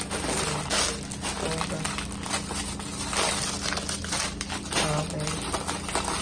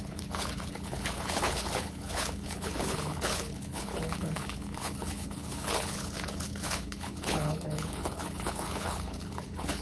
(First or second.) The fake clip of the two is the second